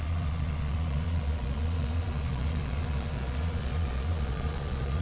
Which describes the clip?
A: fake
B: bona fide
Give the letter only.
A